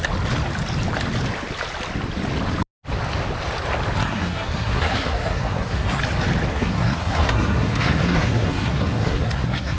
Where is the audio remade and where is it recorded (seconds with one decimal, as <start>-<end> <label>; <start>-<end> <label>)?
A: 0.0-4.0 recorded; 4.0-6.0 remade; 6.0-6.5 recorded; 6.5-9.8 remade